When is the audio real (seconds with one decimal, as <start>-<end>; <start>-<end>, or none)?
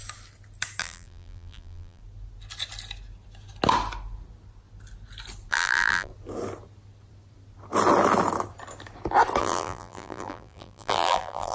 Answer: 0.0-0.8; 2.0-5.5; 6.1-9.4